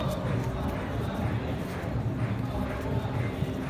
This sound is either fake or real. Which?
real